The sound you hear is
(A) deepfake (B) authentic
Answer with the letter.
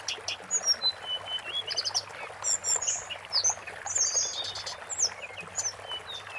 B